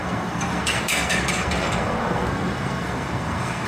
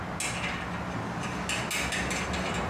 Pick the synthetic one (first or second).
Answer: first